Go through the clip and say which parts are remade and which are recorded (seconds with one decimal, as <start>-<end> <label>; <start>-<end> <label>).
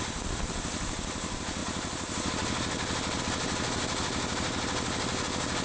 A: 0.0-5.6 recorded